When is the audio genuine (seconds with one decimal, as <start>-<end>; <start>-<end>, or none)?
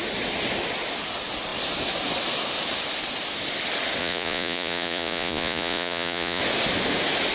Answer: 0.0-4.0; 6.4-7.3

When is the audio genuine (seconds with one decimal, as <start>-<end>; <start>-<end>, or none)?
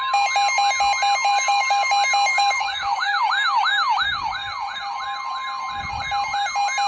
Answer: 0.0-1.3; 1.9-2.3; 3.2-6.9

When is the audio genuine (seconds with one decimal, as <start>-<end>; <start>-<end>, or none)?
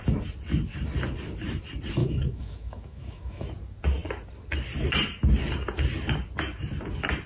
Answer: 0.0-2.0; 3.5-7.3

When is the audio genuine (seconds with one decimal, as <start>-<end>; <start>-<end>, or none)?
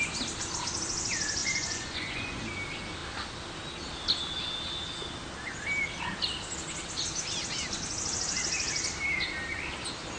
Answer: 0.0-1.4; 2.4-10.2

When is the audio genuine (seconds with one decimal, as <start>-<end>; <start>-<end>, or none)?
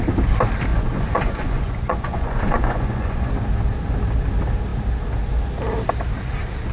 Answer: 0.0-0.7; 3.3-6.7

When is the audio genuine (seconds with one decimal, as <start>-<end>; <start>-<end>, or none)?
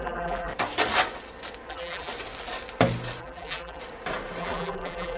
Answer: 0.5-1.7; 2.1-3.2; 3.8-4.4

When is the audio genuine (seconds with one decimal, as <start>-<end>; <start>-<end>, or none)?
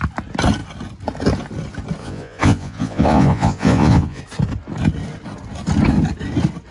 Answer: 0.0-2.0; 4.2-6.7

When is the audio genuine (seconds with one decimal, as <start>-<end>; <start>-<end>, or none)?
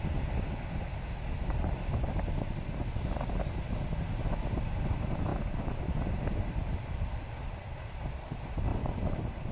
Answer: 0.0-9.5